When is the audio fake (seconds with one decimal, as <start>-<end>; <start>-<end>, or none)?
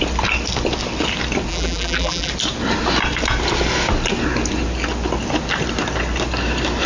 1.5-2.3